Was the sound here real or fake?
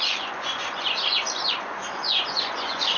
fake